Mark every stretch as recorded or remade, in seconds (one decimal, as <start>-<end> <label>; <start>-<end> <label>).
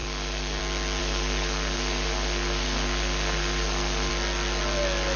0.0-0.6 remade; 0.6-1.0 recorded; 1.0-4.1 remade; 4.1-5.2 recorded